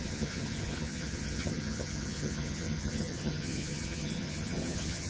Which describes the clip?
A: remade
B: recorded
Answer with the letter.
A